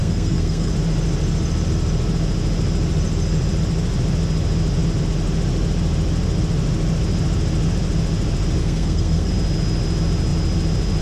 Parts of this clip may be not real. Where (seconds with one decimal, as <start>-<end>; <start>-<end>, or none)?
0.0-0.7; 8.6-9.3